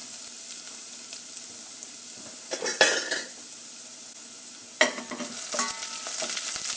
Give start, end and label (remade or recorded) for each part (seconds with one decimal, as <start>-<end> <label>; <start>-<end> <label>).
0.0-6.8 recorded